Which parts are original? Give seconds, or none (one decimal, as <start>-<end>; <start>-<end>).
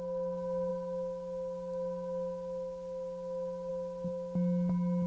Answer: 0.0-5.1